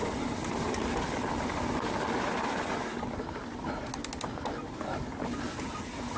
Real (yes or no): yes